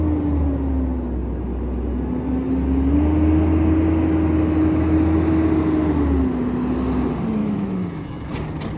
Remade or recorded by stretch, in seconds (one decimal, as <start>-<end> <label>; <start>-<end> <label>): 0.0-7.4 recorded; 7.4-8.3 remade; 8.3-8.8 recorded